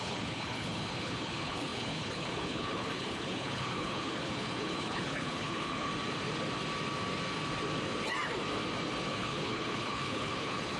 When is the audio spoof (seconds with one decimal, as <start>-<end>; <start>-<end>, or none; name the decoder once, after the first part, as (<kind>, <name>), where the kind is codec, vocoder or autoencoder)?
0.0-5.9 (codec, HILCodec); 9.0-10.8